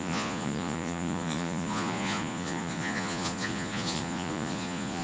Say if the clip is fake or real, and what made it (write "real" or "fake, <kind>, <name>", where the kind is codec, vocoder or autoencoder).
fake, vocoder, Vocos